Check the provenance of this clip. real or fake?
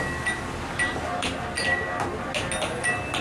real